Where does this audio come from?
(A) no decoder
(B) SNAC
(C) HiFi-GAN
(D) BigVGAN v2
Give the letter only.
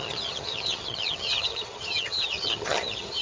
C